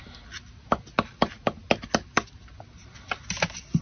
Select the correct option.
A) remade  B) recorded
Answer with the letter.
B